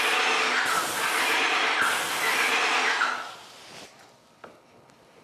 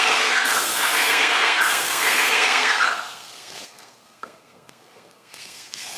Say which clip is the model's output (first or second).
second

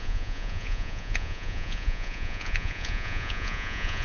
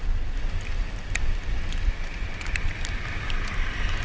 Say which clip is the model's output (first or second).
first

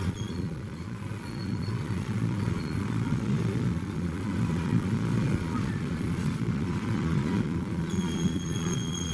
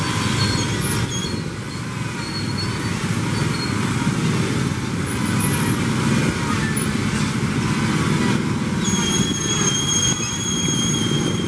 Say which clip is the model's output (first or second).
first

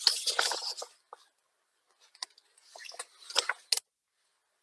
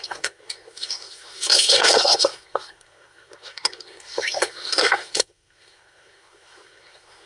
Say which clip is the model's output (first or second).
second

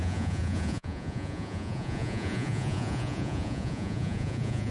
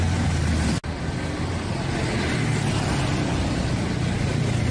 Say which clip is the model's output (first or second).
first